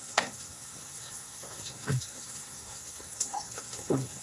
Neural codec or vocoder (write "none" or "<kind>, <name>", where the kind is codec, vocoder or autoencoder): codec, SNAC